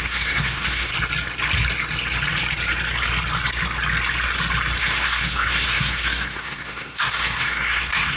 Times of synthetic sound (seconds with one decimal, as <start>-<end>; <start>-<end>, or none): 0.0-0.9; 4.8-8.2

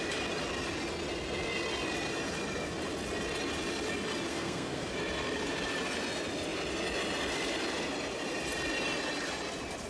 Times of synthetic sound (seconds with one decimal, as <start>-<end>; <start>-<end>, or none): 4.3-4.9

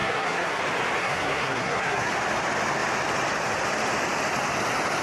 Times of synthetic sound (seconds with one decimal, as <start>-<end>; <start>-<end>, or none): 0.0-0.6; 1.0-2.1

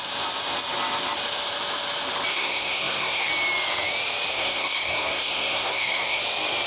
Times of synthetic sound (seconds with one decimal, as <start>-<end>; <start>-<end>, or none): 2.3-3.3; 4.3-6.2

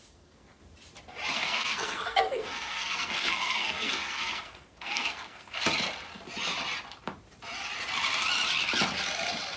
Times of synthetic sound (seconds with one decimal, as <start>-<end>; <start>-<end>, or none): 0.0-0.6; 1.3-5.6

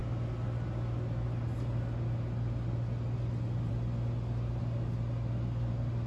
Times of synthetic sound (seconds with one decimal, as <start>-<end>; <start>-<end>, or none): none

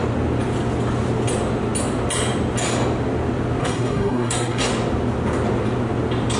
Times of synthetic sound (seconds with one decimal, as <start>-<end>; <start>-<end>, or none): 3.6-4.7